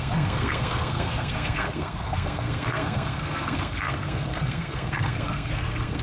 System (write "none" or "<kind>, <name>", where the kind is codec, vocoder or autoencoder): codec, SNAC